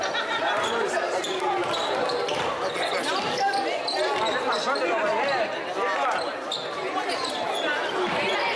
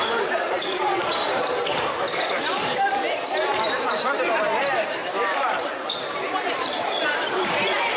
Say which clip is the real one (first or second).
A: first